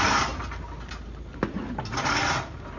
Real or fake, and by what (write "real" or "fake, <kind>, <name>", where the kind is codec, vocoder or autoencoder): real